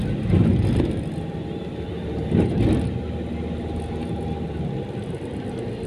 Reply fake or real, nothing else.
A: real